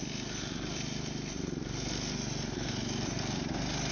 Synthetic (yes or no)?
no